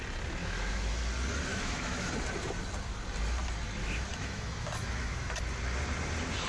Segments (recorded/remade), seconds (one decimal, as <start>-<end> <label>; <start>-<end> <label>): 0.0-0.4 recorded; 0.4-1.0 remade; 1.0-1.5 recorded; 1.5-2.1 remade; 2.1-3.8 recorded; 3.8-5.4 remade; 5.4-6.5 recorded